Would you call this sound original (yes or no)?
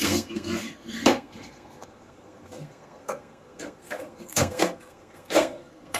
no